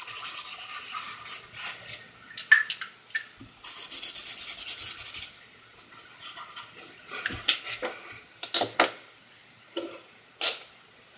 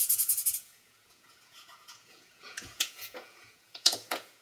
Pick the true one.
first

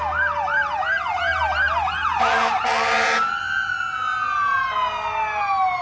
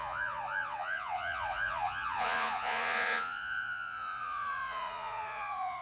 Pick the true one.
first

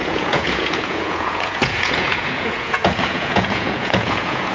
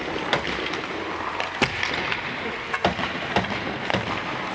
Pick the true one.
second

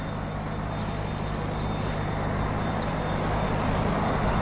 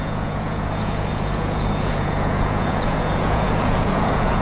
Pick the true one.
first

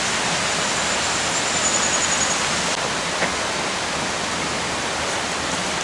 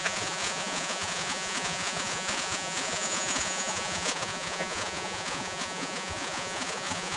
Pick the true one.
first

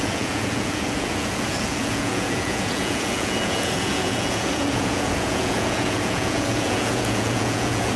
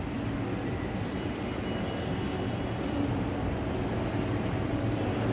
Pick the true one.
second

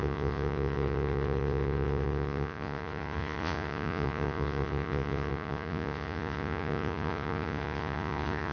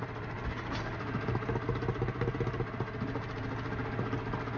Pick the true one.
second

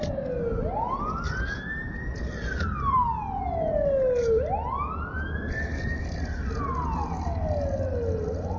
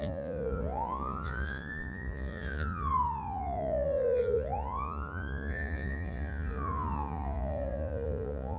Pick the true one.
first